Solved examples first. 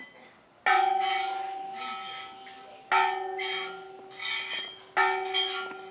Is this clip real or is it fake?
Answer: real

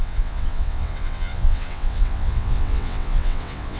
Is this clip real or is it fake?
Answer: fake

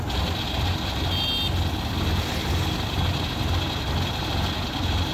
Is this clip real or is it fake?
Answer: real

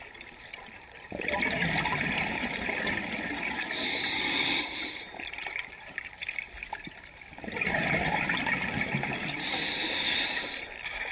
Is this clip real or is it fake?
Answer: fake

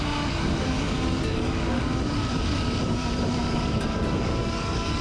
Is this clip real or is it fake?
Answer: fake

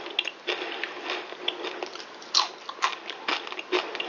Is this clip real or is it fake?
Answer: real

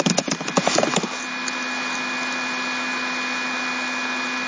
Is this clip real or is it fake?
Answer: real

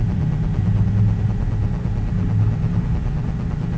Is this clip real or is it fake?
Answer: real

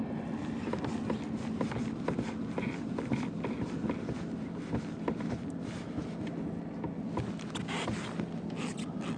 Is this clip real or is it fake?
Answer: real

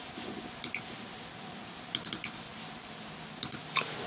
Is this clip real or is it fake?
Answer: real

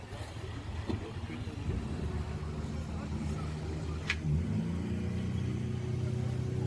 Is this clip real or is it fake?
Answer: real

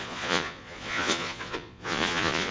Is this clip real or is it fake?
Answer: fake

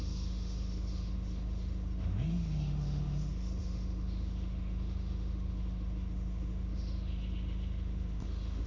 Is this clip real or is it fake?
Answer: fake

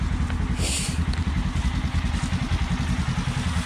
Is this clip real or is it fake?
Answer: real